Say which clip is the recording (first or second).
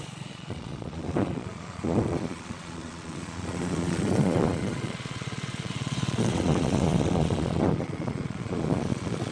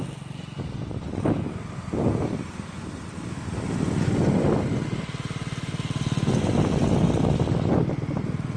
second